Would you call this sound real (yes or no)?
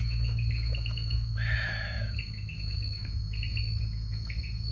no